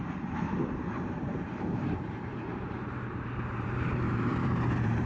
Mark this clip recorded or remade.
remade